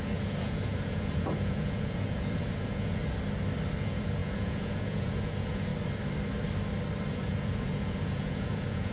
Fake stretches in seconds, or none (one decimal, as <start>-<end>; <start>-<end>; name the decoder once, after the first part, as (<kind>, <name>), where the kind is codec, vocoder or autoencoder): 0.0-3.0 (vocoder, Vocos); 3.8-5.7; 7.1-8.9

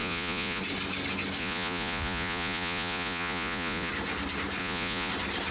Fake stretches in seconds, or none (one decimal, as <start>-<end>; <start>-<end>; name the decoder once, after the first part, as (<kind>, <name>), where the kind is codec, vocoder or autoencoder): 0.0-0.6 (vocoder, Vocos); 1.4-3.9; 4.6-5.1

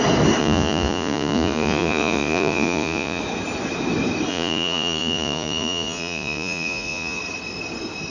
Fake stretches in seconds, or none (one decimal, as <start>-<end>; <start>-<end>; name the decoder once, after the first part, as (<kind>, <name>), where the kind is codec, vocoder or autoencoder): 0.4-3.2 (vocoder, Vocos); 4.3-7.2